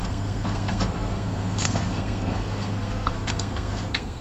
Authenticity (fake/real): fake